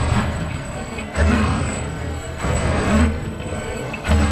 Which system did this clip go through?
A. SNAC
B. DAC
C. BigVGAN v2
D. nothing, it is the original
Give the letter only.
A